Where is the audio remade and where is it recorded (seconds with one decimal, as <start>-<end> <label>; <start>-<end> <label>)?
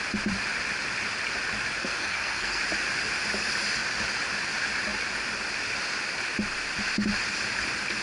0.0-1.8 recorded; 1.8-2.6 remade; 2.6-8.0 recorded